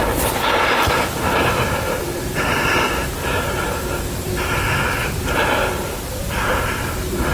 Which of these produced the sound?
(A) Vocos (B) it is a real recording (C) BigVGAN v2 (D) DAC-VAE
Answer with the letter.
B